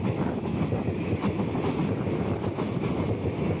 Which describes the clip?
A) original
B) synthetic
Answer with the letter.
A